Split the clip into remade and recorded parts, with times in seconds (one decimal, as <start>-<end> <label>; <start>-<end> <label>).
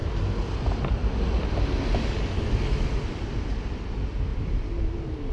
0.0-5.3 recorded